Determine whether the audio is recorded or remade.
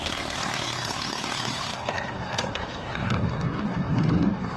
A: remade